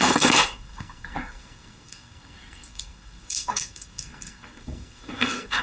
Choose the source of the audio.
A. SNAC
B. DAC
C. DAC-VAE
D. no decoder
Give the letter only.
A